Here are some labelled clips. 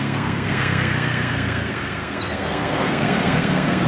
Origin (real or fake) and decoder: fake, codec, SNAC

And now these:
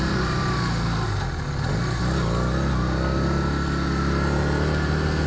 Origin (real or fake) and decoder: real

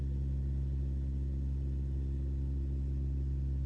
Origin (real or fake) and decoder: real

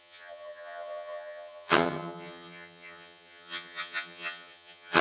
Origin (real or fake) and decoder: fake, vocoder, HiFi-GAN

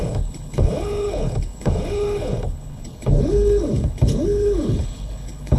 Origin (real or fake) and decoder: fake, codec, HILCodec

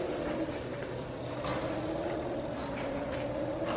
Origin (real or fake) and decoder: real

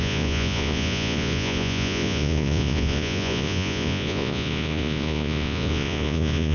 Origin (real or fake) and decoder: fake, vocoder, Vocos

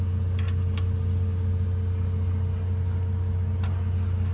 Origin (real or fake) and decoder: real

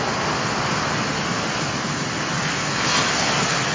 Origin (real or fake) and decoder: real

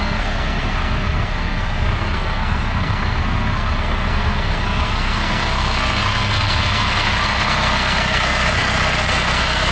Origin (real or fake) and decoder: fake, codec, SNAC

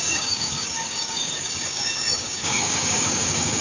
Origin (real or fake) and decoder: fake, codec, DAC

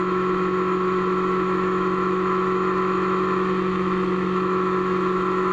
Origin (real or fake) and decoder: fake, autoencoder, DAC-VAE